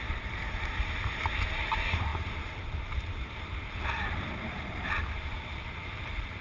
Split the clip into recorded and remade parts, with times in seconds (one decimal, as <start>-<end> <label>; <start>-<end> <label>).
0.0-6.4 recorded

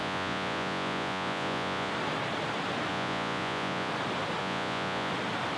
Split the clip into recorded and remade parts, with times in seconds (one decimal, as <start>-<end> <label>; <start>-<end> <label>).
0.0-1.9 remade; 1.9-2.9 recorded; 2.9-3.9 remade; 3.9-4.4 recorded; 4.4-5.1 remade; 5.1-5.6 recorded

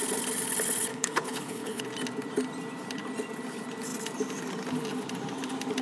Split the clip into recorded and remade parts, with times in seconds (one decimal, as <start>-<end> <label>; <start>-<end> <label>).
0.0-0.9 recorded; 0.9-1.8 remade; 1.8-5.8 recorded

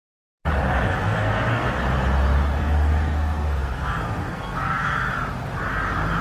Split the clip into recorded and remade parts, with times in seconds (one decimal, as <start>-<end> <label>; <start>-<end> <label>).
0.0-0.9 recorded; 0.9-1.8 remade; 1.8-2.6 recorded; 2.6-5.1 remade; 5.1-6.2 recorded

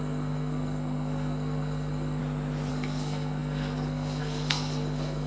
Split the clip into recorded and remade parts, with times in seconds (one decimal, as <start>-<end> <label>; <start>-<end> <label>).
0.0-2.2 remade; 2.2-2.7 recorded; 2.7-5.3 remade

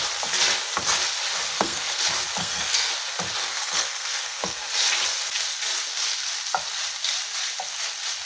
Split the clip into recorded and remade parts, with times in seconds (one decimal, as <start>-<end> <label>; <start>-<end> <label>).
0.0-1.5 recorded; 1.5-2.0 remade; 2.0-2.4 recorded; 2.4-2.9 remade; 2.9-3.4 recorded; 3.4-4.7 remade; 4.7-8.3 recorded

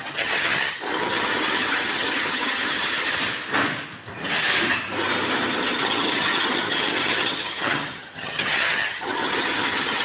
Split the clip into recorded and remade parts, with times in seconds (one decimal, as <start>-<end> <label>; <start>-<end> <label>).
0.0-2.9 remade; 2.9-5.8 recorded; 5.8-10.0 remade